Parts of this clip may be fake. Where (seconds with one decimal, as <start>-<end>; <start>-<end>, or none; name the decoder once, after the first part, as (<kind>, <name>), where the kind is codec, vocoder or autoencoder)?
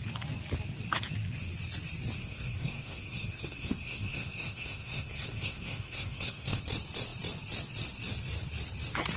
2.2-6.6 (codec, SNAC)